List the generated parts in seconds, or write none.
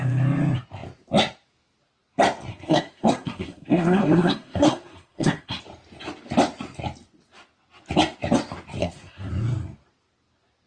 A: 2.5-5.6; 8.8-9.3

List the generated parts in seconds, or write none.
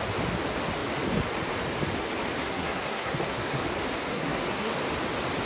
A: 2.4-3.6; 4.1-4.7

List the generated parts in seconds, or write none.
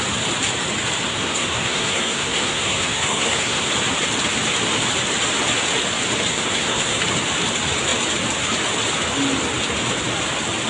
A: 1.1-3.7; 6.3-7.0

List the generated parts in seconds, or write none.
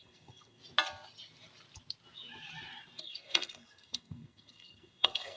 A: 0.0-0.6; 3.0-5.4